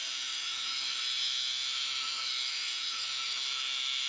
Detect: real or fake fake